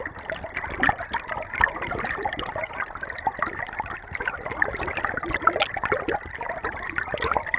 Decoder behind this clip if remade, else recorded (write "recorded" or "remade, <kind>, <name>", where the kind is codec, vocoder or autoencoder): recorded